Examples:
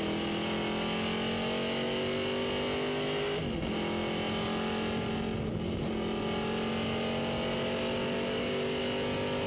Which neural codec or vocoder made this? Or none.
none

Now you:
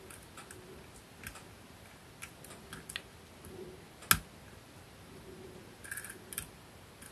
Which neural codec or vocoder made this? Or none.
none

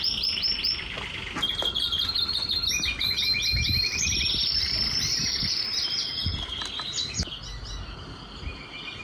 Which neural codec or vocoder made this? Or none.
none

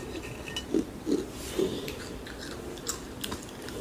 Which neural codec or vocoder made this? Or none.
none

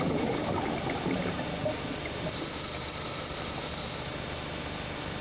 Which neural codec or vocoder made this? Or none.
none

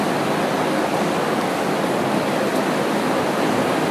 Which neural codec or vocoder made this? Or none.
none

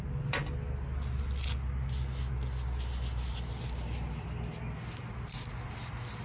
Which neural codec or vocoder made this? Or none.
none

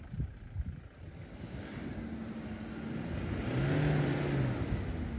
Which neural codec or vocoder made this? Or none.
none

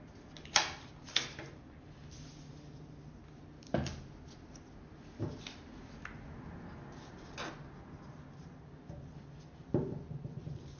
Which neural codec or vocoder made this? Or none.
none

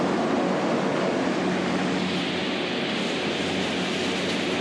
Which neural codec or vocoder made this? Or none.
none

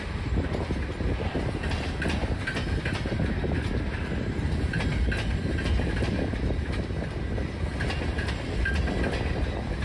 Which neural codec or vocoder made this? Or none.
none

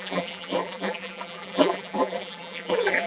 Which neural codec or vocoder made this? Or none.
vocoder, BigVGAN v2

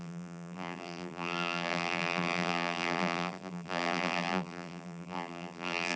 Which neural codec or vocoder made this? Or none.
vocoder, BigVGAN v2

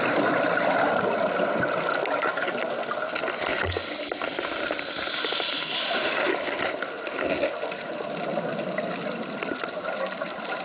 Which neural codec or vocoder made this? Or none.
none